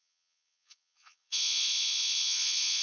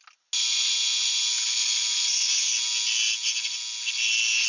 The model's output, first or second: first